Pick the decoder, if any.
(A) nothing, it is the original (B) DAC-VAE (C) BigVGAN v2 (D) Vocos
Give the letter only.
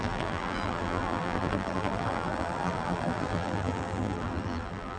C